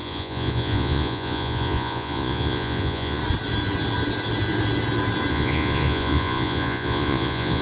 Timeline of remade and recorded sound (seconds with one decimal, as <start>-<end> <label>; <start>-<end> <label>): 0.0-3.2 remade; 3.2-5.3 recorded; 5.3-7.6 remade